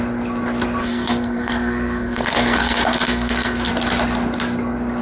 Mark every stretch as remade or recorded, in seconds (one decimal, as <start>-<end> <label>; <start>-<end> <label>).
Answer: 0.0-0.8 recorded; 0.8-3.7 remade; 3.7-5.0 recorded